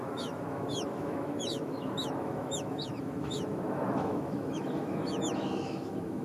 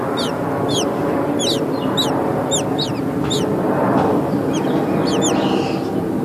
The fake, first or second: first